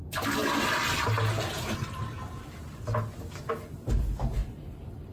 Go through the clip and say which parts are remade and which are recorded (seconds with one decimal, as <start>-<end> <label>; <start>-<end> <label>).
0.0-5.1 recorded